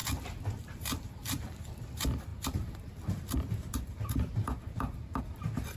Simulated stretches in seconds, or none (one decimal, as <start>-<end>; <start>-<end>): 0.0-2.3; 5.2-5.8